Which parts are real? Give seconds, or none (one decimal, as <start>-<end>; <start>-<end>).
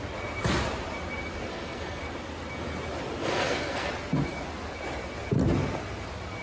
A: 0.0-1.5; 2.0-3.2; 3.9-6.4